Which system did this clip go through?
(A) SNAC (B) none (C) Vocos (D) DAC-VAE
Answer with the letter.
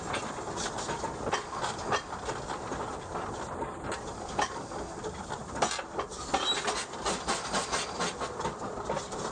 B